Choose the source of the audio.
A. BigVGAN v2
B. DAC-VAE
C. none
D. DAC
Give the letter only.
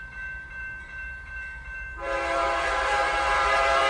A